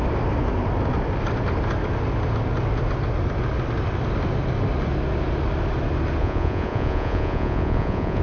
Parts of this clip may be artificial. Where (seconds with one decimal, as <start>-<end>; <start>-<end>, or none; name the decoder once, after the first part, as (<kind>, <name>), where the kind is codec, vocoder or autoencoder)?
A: 6.2-8.2 (vocoder, Vocos)